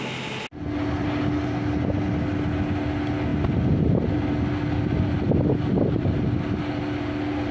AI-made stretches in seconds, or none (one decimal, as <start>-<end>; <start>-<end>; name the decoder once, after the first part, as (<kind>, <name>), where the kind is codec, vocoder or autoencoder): none